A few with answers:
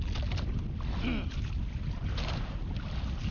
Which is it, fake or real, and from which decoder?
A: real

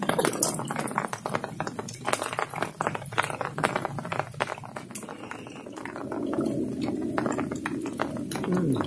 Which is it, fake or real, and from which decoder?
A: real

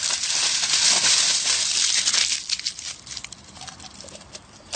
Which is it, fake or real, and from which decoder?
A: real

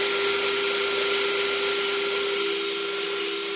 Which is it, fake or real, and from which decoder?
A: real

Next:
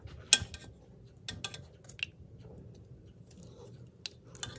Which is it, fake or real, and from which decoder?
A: real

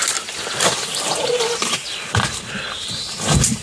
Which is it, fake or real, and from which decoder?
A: real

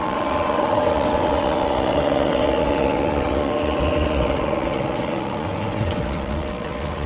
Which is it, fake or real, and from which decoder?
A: fake, vocoder, WaveNeXt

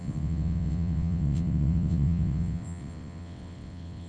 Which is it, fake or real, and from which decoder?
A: fake, vocoder, WaveNeXt